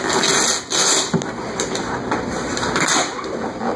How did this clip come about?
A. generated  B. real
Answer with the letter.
B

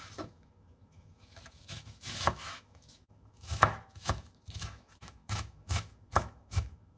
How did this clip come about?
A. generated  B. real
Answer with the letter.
A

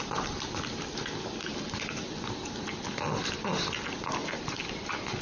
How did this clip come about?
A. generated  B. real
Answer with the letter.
B